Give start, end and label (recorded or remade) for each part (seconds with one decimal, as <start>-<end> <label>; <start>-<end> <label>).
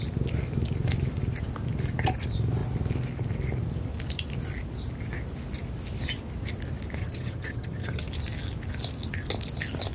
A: 0.0-7.0 recorded; 7.0-8.1 remade; 8.1-9.9 recorded